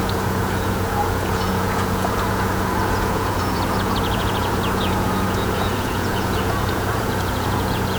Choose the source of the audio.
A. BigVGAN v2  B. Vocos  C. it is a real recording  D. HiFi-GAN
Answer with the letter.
B